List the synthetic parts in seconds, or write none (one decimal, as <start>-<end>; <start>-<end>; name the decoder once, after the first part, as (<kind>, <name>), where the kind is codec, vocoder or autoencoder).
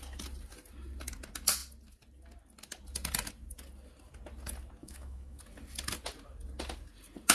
4.8-5.4 (autoencoder, DAC-VAE)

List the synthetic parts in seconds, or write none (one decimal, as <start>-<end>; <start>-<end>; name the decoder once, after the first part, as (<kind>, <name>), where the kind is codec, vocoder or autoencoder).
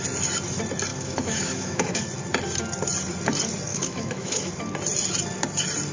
0.9-2.0 (autoencoder, DAC-VAE); 3.7-4.5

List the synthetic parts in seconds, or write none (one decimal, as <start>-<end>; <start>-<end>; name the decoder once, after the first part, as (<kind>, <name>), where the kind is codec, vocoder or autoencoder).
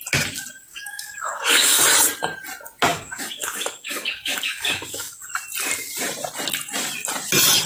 0.7-1.8 (codec, DAC); 2.9-5.2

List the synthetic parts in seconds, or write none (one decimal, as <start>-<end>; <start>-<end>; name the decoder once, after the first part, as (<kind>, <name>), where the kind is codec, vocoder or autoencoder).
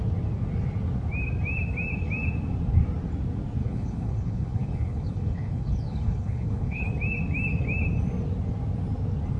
3.6-6.9 (codec, HILCodec)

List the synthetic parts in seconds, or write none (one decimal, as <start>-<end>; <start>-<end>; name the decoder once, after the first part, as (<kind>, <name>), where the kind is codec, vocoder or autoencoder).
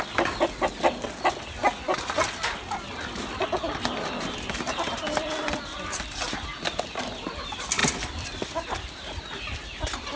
none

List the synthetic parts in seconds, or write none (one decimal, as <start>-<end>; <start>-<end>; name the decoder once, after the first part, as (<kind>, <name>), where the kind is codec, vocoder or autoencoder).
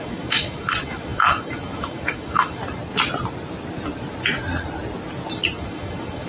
0.0-2.6 (autoencoder, DAC-VAE); 5.6-6.3